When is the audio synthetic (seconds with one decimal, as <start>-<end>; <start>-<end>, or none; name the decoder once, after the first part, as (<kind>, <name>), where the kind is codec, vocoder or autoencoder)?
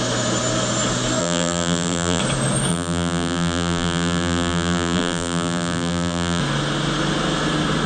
1.2-2.2 (vocoder, BigVGAN v2); 2.7-6.4